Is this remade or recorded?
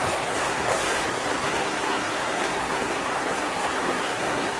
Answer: remade